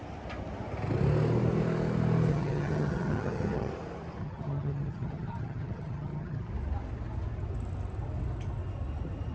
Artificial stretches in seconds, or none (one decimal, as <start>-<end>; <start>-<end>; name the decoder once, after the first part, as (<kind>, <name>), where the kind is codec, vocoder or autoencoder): 2.3-3.7 (vocoder, HiFi-GAN); 4.2-6.5